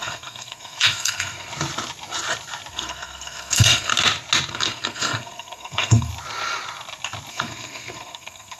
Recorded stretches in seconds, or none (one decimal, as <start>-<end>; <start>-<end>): 1.5-2.7; 3.9-4.5; 6.1-7.3